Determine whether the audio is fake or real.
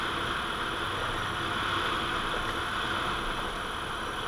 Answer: real